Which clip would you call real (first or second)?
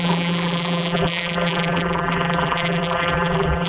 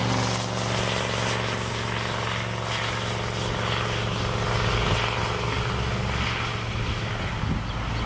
second